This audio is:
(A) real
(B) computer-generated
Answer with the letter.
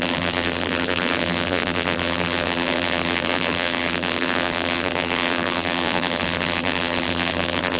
B